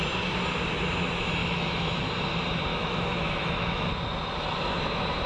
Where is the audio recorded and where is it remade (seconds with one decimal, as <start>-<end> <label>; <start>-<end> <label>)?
0.0-1.4 recorded; 1.4-2.0 remade; 2.0-2.7 recorded; 2.7-3.9 remade; 3.9-5.3 recorded